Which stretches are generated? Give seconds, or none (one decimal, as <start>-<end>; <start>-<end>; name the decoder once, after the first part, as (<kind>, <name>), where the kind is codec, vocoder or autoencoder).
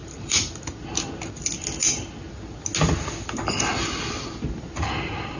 0.0-0.6 (vocoder, BigVGAN v2)